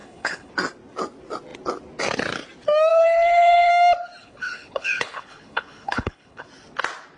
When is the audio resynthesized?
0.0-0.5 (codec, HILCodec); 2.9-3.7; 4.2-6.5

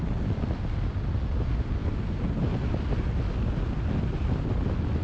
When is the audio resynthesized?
none

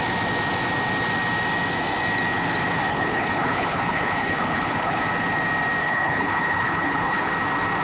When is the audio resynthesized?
2.8-5.0 (codec, HILCodec); 5.8-7.3

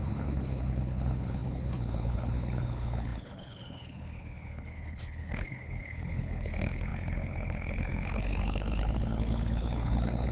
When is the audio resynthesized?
0.0-10.3 (codec, HILCodec)

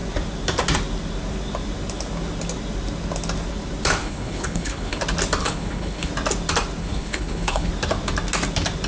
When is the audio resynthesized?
4.0-5.0 (codec, HILCodec); 5.4-6.1; 6.8-7.7

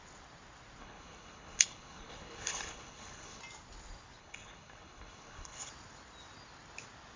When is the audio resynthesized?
0.8-3.4 (codec, HILCodec); 4.2-5.7